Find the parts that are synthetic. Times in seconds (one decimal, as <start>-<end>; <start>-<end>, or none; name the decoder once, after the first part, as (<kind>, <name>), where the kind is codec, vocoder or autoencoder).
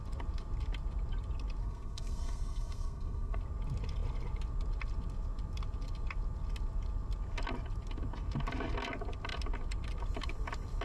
1.6-3.4 (codec, SNAC)